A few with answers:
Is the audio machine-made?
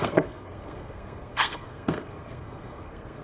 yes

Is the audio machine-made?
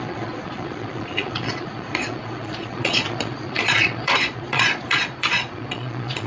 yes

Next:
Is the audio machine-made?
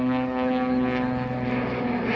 no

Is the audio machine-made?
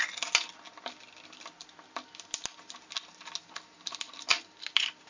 no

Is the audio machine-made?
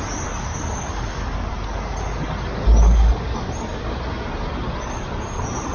no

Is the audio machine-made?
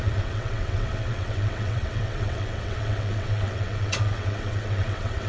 yes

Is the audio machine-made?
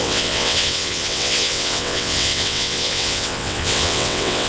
yes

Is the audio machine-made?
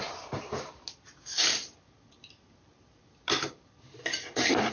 yes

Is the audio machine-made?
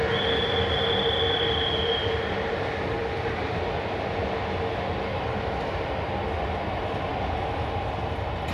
no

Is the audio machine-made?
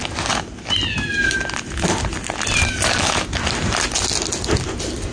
no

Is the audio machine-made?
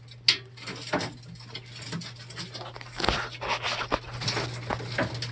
no